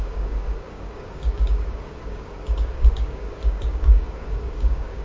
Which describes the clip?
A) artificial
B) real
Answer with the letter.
A